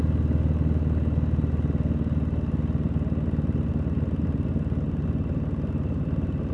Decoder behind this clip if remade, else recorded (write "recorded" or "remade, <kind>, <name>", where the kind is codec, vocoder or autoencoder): recorded